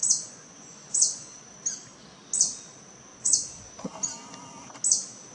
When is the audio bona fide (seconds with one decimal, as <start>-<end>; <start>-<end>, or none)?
1.4-3.1; 3.7-5.3